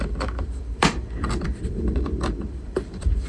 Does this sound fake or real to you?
fake